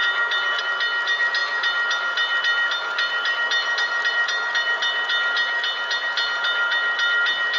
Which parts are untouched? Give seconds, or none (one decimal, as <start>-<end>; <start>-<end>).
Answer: 0.0-7.6